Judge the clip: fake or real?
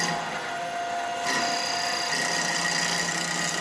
real